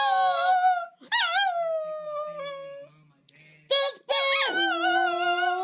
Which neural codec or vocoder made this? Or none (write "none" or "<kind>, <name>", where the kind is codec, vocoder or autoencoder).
none